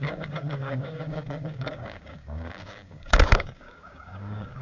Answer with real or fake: fake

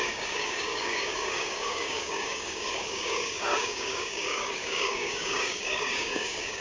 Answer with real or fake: fake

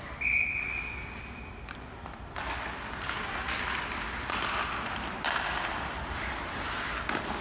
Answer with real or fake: real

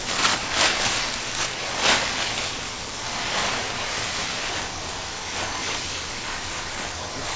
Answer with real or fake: fake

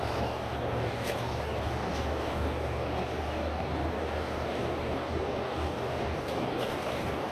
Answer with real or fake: fake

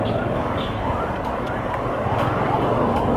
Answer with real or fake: fake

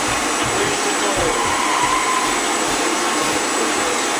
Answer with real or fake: real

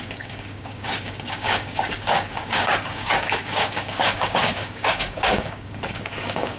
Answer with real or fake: fake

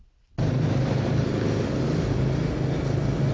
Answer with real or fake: real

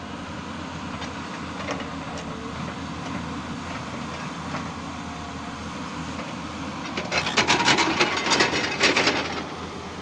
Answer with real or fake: real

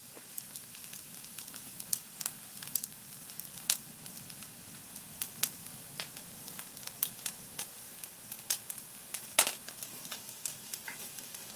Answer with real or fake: fake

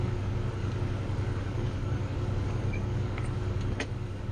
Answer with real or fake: fake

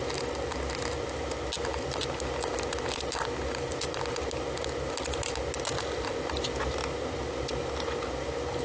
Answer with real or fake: real